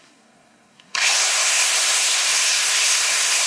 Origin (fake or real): fake